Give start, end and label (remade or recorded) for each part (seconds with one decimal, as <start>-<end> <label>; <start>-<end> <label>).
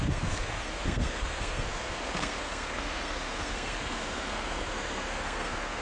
0.0-5.8 remade